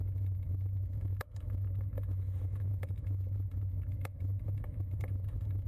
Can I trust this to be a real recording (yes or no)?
no